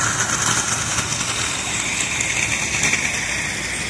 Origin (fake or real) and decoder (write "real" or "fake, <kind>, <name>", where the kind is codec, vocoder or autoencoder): real